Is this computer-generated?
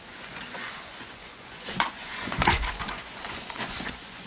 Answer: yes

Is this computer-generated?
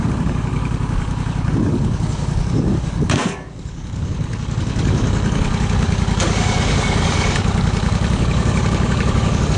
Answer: yes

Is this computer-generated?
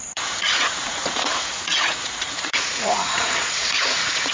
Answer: yes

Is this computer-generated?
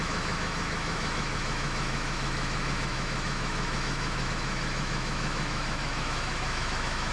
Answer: yes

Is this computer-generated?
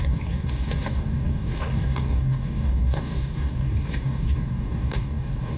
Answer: yes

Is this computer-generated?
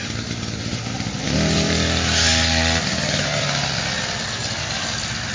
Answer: no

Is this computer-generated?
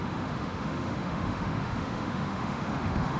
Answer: yes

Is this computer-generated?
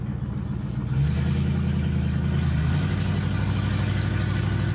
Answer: no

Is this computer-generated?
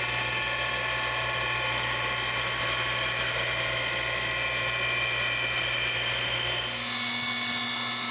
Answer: no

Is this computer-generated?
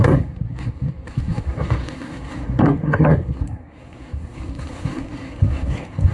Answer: yes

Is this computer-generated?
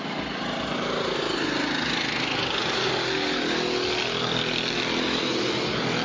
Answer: no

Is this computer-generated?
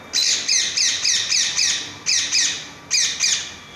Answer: no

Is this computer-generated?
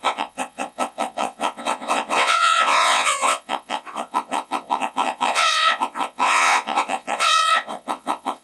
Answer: yes